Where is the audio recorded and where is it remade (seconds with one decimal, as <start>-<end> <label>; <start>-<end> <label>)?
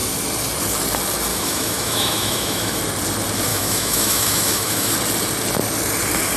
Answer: 0.0-1.3 recorded; 1.3-2.8 remade; 2.8-3.5 recorded; 3.5-4.9 remade; 4.9-6.4 recorded